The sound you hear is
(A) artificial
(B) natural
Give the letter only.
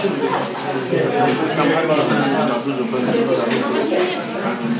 B